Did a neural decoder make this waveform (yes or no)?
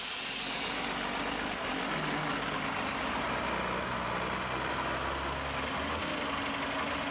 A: no